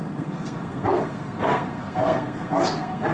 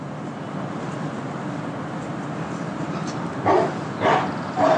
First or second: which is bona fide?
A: second